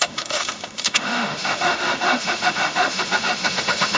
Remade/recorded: remade